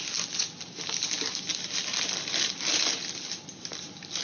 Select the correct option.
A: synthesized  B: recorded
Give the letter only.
B